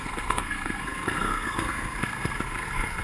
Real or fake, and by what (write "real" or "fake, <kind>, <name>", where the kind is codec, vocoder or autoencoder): fake, codec, SNAC